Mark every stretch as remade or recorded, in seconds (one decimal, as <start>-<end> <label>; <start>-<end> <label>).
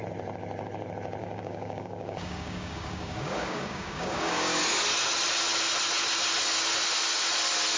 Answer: 0.0-1.2 recorded; 1.2-4.6 remade; 4.6-7.8 recorded